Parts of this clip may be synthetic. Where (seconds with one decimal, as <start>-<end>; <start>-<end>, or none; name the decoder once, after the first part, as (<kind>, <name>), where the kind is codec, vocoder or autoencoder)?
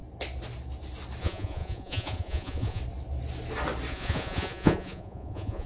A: 1.2-2.8 (vocoder, Vocos); 3.9-5.7